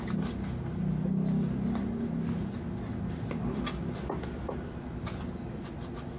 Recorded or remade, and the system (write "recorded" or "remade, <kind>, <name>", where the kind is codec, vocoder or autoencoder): recorded